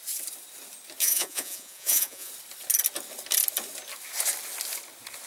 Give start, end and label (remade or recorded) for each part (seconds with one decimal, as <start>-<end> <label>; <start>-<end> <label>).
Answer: 0.0-1.0 recorded; 1.0-2.3 remade; 2.3-5.3 recorded